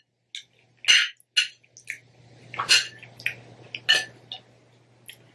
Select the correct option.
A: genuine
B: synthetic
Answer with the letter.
A